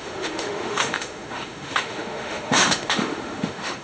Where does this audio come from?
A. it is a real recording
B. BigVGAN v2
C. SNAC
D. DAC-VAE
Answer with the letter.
D